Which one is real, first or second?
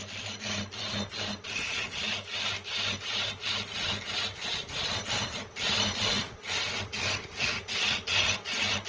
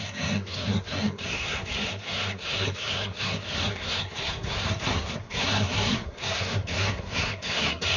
first